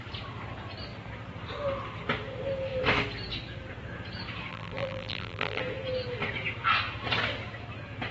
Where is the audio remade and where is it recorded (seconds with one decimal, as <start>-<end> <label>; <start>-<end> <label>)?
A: 0.0-4.5 recorded; 4.5-5.6 remade; 5.6-8.1 recorded